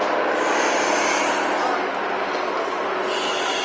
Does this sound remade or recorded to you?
recorded